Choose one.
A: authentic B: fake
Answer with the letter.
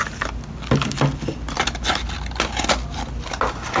A